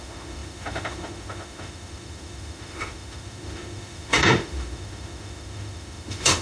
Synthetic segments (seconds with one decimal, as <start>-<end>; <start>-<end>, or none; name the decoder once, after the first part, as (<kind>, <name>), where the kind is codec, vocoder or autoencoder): 0.0-6.4 (autoencoder, DAC-VAE)